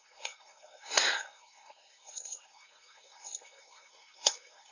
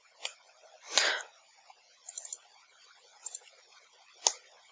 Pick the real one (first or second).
second